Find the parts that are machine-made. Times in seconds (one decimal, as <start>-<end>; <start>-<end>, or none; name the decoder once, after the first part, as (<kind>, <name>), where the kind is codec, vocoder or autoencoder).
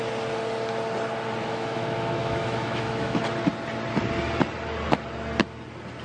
1.4-3.2 (autoencoder, DAC-VAE)